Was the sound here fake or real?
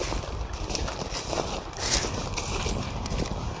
real